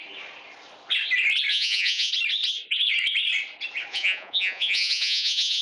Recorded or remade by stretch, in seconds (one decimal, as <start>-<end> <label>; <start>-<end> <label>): 0.0-1.5 recorded; 1.5-2.1 remade; 2.1-3.9 recorded; 3.9-5.6 remade